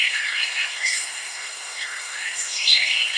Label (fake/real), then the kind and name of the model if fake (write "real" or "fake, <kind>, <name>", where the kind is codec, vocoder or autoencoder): fake, codec, SNAC